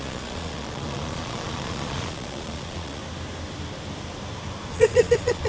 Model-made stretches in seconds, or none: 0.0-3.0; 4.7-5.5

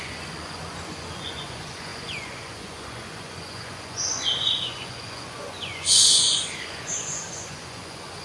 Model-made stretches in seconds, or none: 0.0-8.2

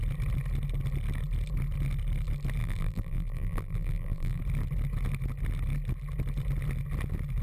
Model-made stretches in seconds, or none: 2.6-4.4

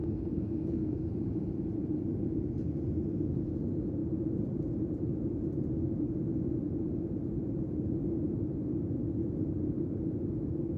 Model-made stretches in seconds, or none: 0.0-1.1

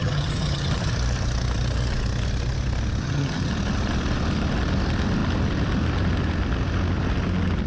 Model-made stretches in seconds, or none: 0.0-0.9; 3.0-3.5

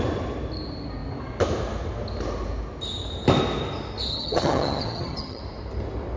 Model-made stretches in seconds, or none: 4.1-5.4